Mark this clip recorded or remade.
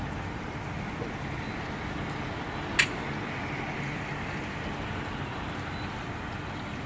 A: recorded